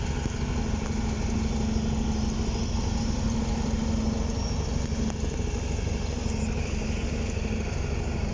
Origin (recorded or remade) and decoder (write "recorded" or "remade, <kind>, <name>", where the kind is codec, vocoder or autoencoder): recorded